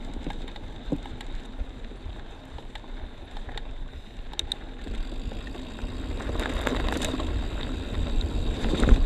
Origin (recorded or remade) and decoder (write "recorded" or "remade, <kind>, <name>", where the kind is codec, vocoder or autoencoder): recorded